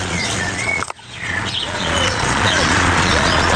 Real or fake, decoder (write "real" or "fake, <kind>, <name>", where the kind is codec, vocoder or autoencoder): fake, vocoder, Vocos